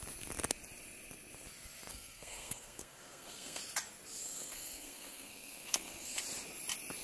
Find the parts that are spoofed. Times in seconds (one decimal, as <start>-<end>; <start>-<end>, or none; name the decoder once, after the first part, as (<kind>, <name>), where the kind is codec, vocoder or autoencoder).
1.9-3.6 (codec, SNAC); 4.2-6.2